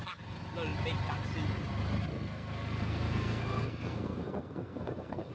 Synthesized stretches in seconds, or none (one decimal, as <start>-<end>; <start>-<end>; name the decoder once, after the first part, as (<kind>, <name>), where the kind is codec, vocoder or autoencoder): 2.1-5.3 (codec, SNAC)